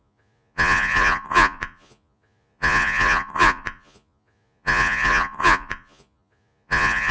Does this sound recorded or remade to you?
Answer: remade